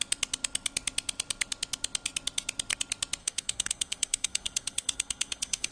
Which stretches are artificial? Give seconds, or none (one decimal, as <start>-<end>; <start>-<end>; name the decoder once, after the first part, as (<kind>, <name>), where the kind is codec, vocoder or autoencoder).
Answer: 3.2-5.7 (codec, SNAC)